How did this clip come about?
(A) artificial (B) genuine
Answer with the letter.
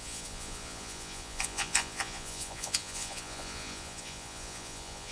A